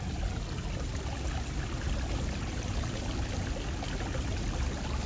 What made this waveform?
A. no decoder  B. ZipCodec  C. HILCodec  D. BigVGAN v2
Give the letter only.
A